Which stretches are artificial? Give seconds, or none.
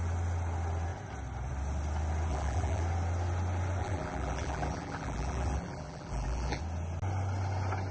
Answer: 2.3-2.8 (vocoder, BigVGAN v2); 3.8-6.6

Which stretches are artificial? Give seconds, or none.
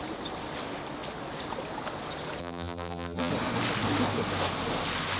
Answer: 2.4-3.3 (vocoder, BigVGAN v2)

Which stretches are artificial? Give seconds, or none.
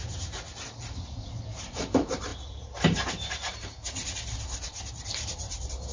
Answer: 1.5-5.9 (vocoder, BigVGAN v2)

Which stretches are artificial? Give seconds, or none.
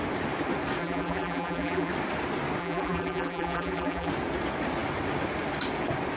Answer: 0.8-1.9 (vocoder, BigVGAN v2); 2.6-4.1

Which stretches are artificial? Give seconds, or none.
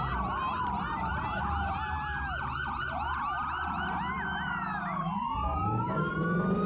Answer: 0.0-1.1 (vocoder, BigVGAN v2); 4.8-6.7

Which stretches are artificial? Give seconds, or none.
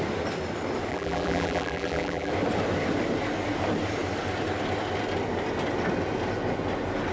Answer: 0.9-2.3 (vocoder, BigVGAN v2)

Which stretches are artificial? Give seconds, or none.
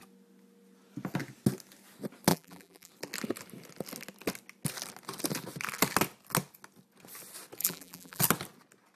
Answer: 2.3-2.9 (vocoder, BigVGAN v2); 7.6-8.2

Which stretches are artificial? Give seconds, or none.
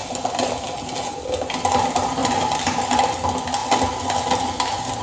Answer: 0.0-0.5 (vocoder, BigVGAN v2); 2.2-3.1